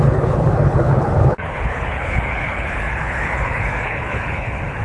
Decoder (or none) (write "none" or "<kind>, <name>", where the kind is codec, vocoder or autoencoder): codec, HILCodec